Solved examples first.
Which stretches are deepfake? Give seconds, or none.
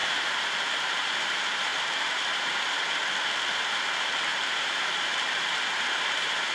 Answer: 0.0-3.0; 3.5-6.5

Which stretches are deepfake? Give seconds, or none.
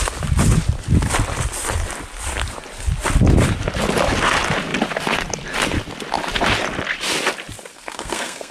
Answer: 7.7-8.5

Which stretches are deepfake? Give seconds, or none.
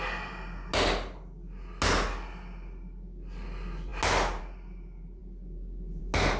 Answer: none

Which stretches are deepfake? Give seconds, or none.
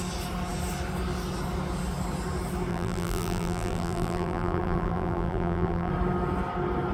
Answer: 2.7-5.9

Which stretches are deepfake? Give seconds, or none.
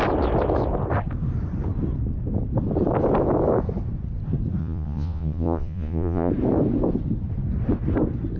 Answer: 4.6-6.3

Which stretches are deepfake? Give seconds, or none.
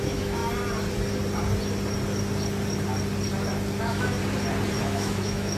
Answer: 0.0-0.4; 3.8-4.2; 4.8-5.6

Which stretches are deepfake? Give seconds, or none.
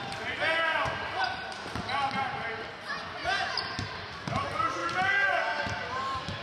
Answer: 3.2-4.0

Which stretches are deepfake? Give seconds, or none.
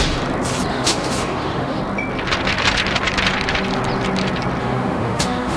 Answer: 0.7-1.8; 4.6-5.6